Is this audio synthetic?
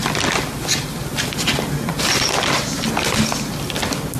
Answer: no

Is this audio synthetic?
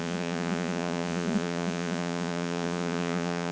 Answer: yes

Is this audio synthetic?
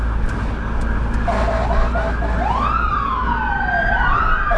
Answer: no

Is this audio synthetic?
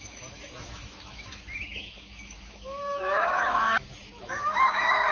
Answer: yes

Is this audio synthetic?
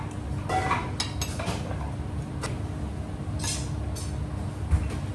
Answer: no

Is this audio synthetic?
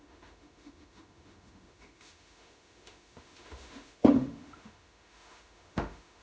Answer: yes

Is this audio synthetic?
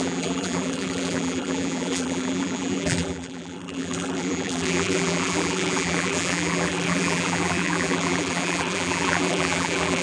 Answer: yes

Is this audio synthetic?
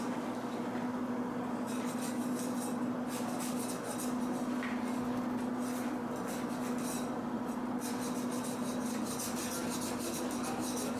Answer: no